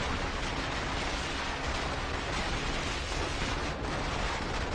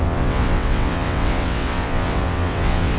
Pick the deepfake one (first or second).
second